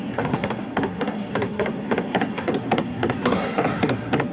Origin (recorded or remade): remade